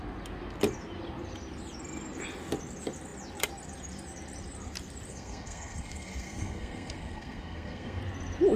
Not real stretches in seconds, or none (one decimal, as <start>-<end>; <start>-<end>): 5.1-8.0